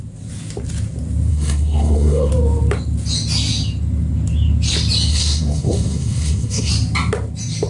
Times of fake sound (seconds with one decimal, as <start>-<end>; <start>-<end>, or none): 1.3-2.3; 5.1-6.7